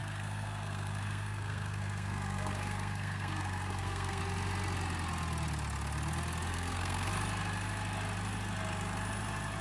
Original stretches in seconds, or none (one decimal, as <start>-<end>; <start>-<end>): 4.2-6.5; 7.1-9.6